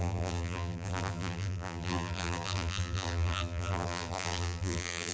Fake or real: fake